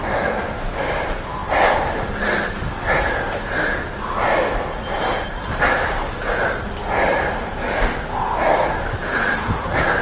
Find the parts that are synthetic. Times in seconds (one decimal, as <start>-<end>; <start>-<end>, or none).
none